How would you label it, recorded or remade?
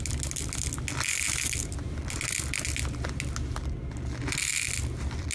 recorded